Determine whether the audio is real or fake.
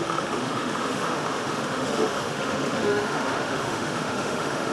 fake